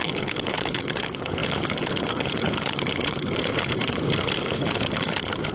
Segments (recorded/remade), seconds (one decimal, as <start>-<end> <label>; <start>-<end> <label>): 0.0-5.5 remade